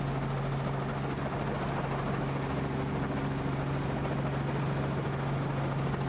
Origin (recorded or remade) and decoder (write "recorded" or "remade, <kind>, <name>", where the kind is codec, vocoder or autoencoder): recorded